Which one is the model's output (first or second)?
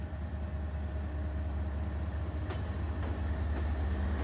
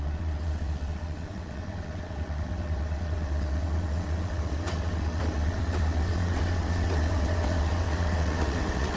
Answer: second